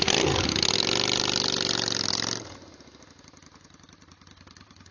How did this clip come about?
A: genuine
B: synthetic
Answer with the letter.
A